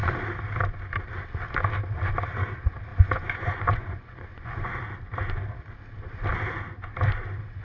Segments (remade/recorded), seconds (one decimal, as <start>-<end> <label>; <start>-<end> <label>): 0.0-2.9 recorded; 2.9-4.8 remade; 4.8-7.6 recorded